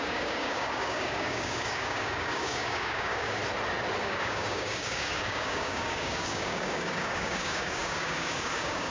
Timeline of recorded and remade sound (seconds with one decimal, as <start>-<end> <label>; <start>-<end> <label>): 0.0-3.4 remade; 3.4-4.0 recorded; 4.0-8.9 remade